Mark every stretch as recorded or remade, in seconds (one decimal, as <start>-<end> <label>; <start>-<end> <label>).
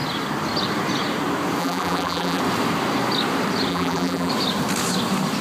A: 0.0-1.6 recorded; 1.6-2.4 remade; 2.4-3.7 recorded; 3.7-4.3 remade; 4.3-5.4 recorded